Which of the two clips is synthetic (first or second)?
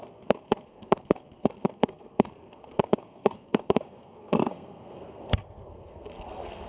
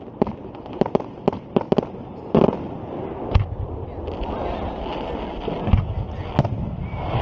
first